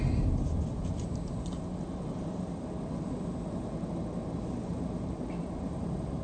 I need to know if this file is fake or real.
real